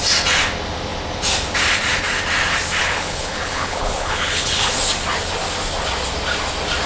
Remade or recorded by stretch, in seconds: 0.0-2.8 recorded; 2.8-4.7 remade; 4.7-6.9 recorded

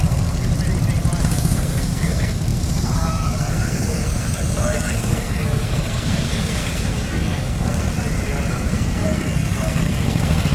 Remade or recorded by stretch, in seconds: 0.0-0.5 remade; 0.5-1.2 recorded; 1.2-7.9 remade; 7.9-8.5 recorded; 8.5-10.5 remade